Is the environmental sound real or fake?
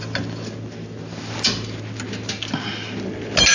real